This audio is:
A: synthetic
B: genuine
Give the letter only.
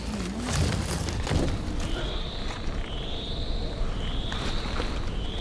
B